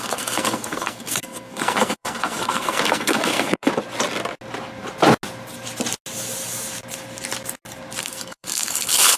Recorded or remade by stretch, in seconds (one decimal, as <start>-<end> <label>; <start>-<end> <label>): 0.0-3.7 remade; 3.7-8.0 recorded; 8.0-9.2 remade